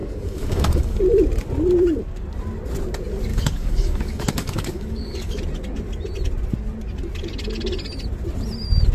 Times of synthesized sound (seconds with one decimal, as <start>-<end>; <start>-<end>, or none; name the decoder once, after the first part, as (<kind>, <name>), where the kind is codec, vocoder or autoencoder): 0.0-1.0 (codec, DAC); 3.3-5.4